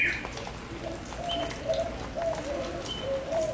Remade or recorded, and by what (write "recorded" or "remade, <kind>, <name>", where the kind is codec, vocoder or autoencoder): remade, vocoder, BigVGAN v2